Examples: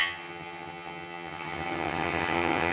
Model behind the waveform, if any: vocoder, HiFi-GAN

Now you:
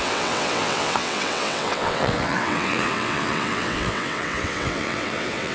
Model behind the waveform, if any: vocoder, WaveNeXt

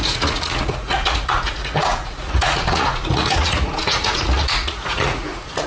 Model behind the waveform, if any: vocoder, Vocos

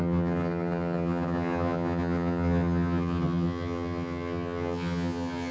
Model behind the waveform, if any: vocoder, HiFi-GAN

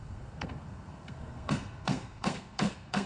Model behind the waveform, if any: codec, SNAC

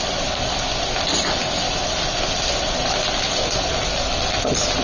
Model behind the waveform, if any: none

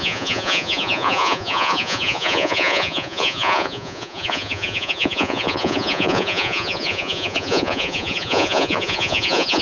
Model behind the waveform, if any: vocoder, Vocos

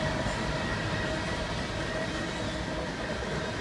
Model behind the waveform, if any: none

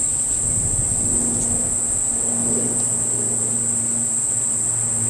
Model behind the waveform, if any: none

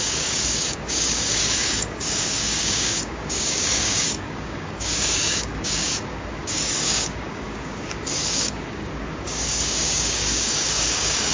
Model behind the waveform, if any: codec, DAC